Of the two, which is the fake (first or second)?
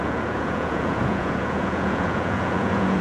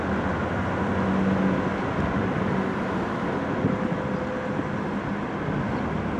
first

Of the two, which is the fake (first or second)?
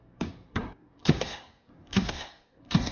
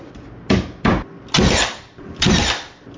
first